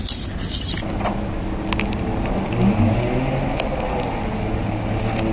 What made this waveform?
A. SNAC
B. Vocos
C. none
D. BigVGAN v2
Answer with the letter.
C